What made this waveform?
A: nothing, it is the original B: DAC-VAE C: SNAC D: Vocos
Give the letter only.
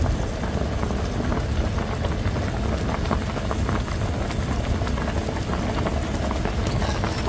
A